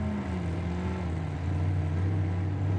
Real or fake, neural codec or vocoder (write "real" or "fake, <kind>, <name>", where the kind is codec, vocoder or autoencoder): real